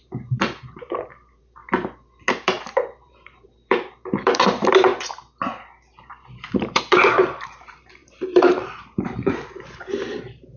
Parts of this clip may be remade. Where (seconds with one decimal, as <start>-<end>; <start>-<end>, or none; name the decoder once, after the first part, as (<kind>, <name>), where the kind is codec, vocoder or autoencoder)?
0.0-1.6 (vocoder, BigVGAN v2); 2.3-4.9; 6.0-10.6